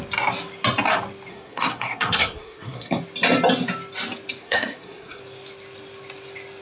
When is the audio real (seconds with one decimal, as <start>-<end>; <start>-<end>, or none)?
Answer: 0.0-1.3; 3.0-4.4; 5.2-6.6